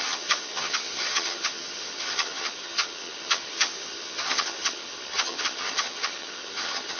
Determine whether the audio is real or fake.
fake